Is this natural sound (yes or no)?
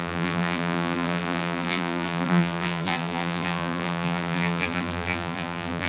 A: no